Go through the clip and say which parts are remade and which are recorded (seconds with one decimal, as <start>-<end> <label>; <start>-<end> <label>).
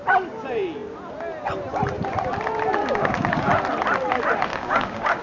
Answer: 0.0-2.8 recorded; 2.8-3.4 remade; 3.4-4.5 recorded; 4.5-5.2 remade